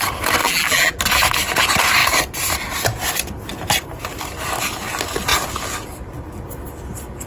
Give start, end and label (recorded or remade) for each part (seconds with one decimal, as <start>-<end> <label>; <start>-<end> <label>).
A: 0.0-0.4 recorded; 0.4-1.0 remade; 1.0-7.3 recorded